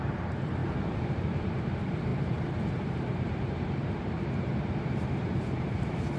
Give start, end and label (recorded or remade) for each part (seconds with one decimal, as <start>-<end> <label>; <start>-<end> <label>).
0.0-6.2 remade